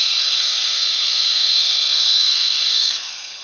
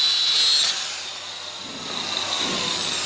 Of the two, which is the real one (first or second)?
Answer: second